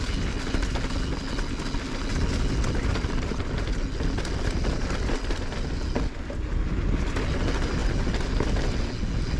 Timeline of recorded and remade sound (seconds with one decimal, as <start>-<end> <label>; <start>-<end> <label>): 0.0-9.4 recorded